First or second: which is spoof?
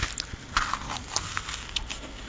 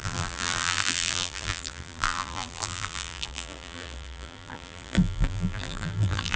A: second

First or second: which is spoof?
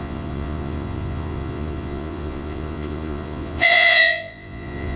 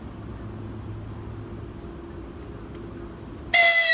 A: first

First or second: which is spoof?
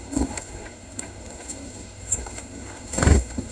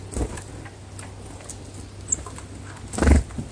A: first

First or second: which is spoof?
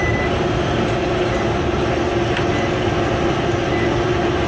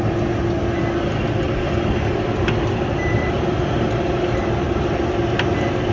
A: second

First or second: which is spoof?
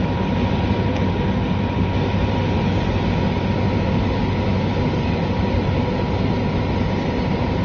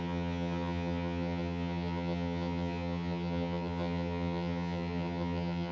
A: second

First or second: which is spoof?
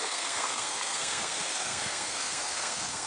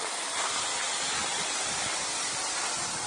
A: first